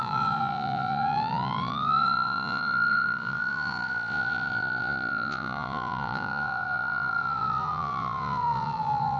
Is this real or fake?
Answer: fake